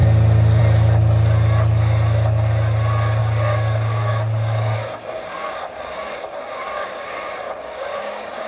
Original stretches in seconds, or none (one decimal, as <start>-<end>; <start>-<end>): 0.0-3.2